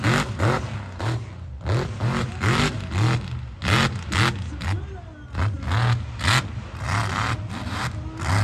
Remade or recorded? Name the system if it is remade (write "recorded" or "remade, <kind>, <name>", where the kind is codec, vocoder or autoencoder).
recorded